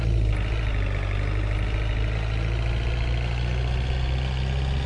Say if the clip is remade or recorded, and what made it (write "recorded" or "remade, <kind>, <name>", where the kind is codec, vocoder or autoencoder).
recorded